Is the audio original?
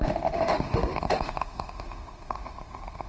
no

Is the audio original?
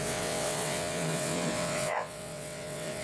no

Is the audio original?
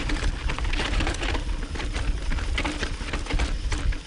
yes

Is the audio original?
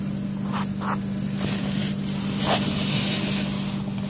yes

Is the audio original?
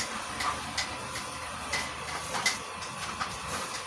yes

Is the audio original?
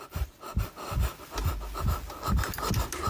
yes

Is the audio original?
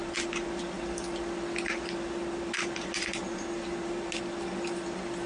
yes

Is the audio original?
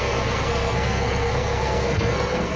no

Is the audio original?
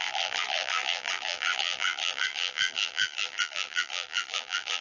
no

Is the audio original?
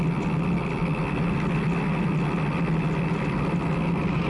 yes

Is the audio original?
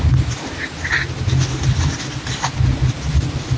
yes